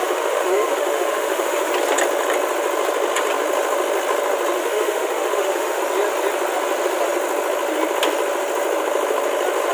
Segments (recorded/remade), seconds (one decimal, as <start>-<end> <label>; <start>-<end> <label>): 0.0-1.7 remade; 1.7-4.6 recorded; 4.6-5.8 remade; 5.8-9.7 recorded